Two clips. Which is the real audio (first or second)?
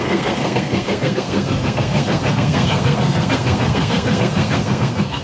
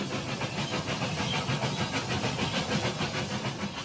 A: second